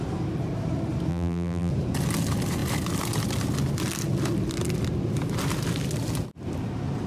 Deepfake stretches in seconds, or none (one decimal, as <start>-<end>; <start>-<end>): 1.1-1.7